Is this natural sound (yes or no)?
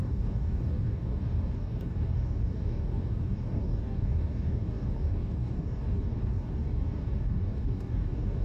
no